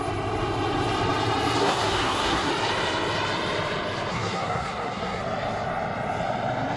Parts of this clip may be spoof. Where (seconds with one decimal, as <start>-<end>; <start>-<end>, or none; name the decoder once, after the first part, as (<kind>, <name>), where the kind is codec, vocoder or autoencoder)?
1.6-2.5 (codec, SNAC); 4.1-5.2